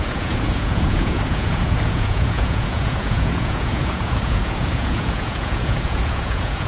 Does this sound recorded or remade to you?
remade